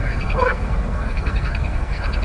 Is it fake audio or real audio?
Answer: fake